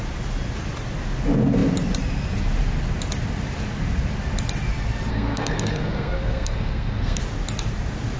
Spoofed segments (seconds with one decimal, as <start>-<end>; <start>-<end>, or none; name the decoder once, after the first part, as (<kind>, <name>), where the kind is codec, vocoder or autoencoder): 5.1-7.2 (codec, SNAC)